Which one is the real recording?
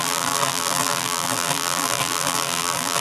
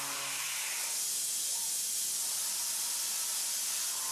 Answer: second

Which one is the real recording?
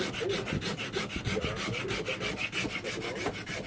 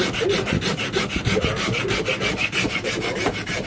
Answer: first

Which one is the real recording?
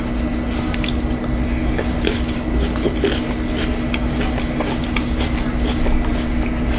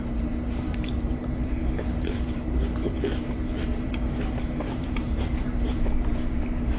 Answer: first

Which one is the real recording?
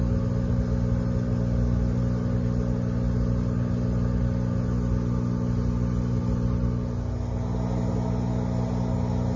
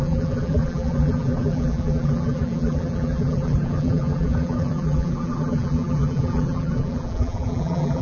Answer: first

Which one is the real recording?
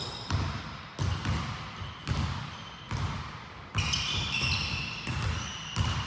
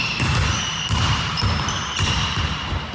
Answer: first